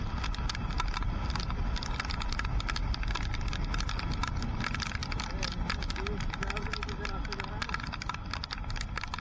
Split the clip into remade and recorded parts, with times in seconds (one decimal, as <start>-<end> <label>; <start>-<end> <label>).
0.0-9.2 recorded